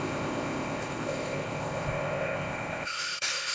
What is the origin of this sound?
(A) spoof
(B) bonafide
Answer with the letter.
A